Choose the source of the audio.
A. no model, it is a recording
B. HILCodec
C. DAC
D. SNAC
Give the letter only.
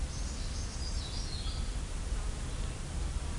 A